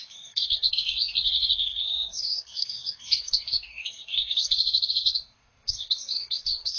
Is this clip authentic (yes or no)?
no